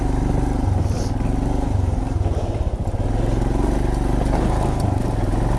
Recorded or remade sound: recorded